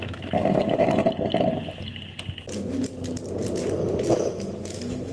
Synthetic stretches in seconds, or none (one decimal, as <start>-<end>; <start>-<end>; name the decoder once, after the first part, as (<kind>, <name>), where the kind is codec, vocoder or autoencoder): 0.0-1.0 (autoencoder, DAC-VAE); 4.1-5.1